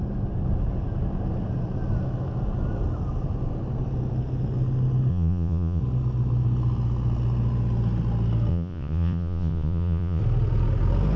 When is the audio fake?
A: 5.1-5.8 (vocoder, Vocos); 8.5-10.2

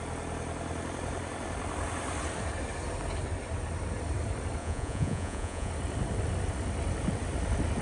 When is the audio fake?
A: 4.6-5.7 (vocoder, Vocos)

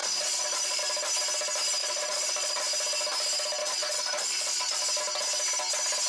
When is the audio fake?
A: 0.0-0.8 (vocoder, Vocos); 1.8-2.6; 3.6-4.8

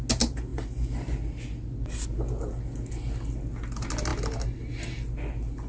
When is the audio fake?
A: none

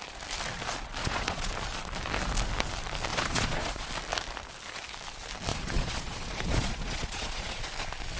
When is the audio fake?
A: 1.0-1.5 (vocoder, Vocos); 3.1-3.9; 5.5-7.7

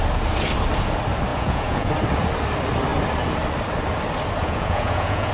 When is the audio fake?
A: 1.3-1.9 (vocoder, Vocos); 4.4-5.3

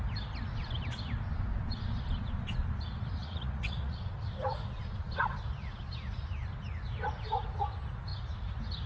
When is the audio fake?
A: 3.2-4.1 (vocoder, Vocos)

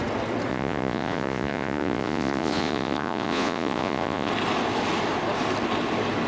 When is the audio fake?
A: 0.5-4.3 (vocoder, Vocos)